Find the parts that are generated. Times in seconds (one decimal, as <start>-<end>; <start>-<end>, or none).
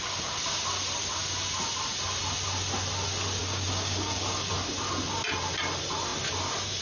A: 3.4-4.5